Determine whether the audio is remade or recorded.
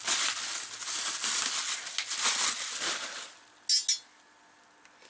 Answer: recorded